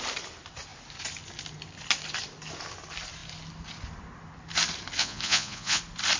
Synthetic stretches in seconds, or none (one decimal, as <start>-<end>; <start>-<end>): 5.0-5.8